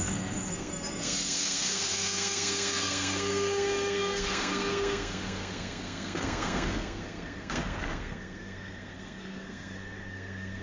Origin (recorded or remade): remade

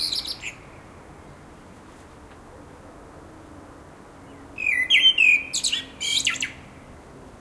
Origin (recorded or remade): recorded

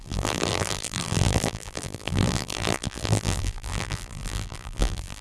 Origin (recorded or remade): remade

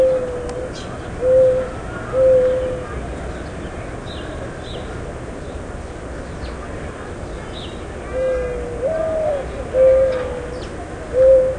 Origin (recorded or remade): recorded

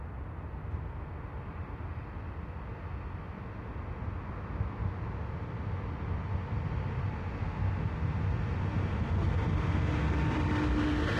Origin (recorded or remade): recorded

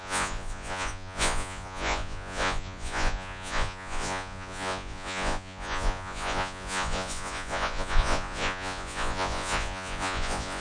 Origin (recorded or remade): remade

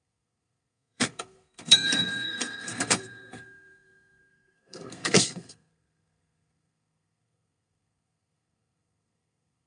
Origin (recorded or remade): remade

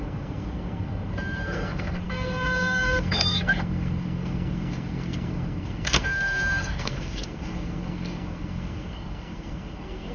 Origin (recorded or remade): remade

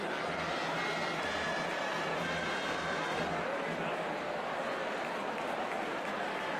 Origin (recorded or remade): recorded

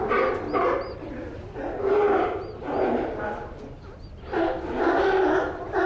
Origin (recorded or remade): recorded